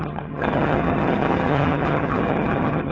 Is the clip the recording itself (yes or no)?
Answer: no